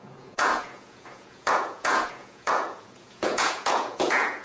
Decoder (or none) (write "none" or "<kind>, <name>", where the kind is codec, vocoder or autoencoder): vocoder, Vocos